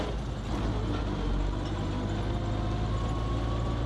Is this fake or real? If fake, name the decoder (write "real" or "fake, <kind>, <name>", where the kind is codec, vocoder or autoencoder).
real